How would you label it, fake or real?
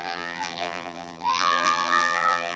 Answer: fake